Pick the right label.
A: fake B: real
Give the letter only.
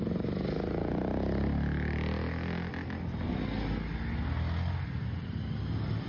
B